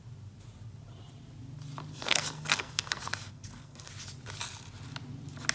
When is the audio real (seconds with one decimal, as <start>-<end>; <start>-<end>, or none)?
0.0-1.9; 3.9-5.5